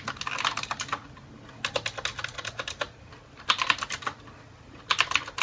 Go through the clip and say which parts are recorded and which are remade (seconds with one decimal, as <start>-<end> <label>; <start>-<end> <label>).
0.0-5.4 recorded